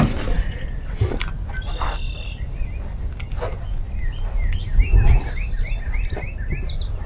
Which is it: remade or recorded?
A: recorded